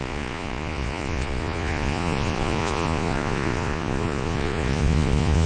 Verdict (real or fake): fake